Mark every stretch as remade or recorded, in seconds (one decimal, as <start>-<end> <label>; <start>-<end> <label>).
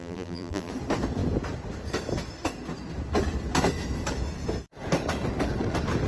0.0-0.7 remade; 0.7-6.1 recorded